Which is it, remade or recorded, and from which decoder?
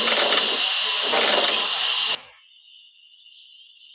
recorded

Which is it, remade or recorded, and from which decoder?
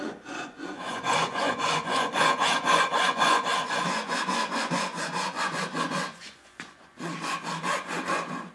remade, vocoder, Vocos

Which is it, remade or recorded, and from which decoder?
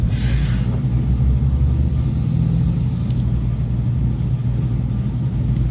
recorded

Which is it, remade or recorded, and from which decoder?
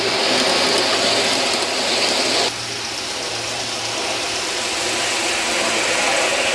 recorded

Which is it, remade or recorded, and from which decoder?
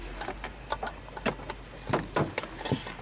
recorded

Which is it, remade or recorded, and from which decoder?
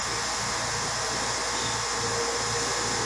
recorded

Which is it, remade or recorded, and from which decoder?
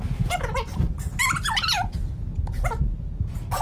recorded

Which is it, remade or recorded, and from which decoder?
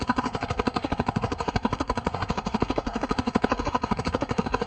remade, codec, SNAC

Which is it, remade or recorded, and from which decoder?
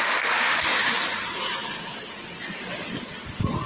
recorded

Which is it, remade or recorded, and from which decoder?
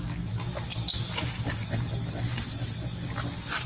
recorded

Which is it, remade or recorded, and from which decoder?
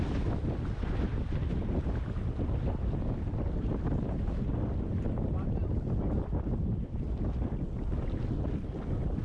recorded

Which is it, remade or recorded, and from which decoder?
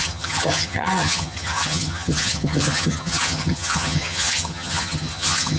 remade, vocoder, HiFi-GAN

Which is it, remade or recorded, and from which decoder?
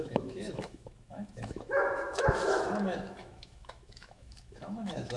remade, autoencoder, DAC-VAE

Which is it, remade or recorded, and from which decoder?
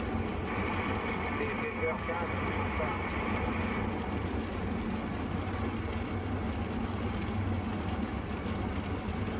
recorded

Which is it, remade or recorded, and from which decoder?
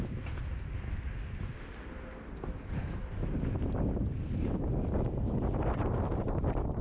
recorded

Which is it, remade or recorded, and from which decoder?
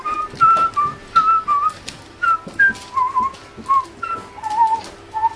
recorded